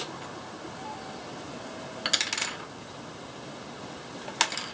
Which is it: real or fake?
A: real